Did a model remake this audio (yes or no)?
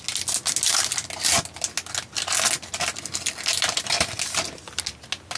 no